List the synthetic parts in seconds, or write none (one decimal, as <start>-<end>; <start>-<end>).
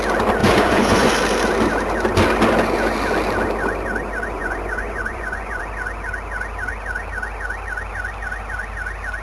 0.4-1.1; 4.4-5.6